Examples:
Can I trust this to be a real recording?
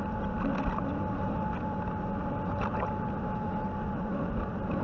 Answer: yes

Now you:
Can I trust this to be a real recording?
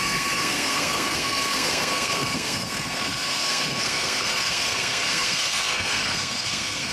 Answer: no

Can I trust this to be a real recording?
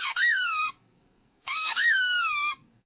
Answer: no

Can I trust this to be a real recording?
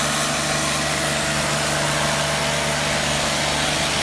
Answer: yes